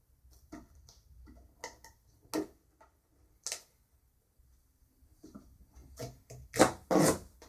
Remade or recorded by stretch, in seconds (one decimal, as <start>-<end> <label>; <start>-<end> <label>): 0.0-7.5 recorded